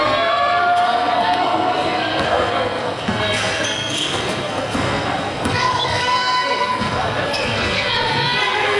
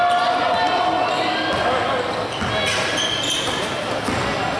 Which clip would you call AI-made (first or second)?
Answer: first